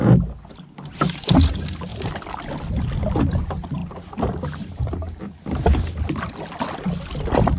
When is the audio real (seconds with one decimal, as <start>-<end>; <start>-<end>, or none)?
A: 0.0-7.6